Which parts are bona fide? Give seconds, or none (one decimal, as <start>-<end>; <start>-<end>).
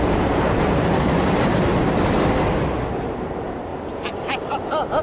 1.7-3.0; 3.7-5.0